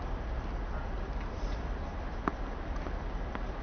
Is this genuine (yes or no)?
yes